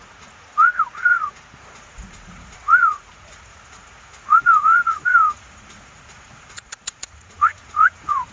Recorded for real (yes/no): no